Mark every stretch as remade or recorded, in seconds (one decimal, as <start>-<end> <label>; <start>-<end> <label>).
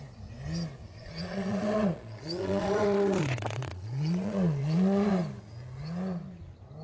0.0-1.0 recorded; 1.0-5.1 remade; 5.1-6.8 recorded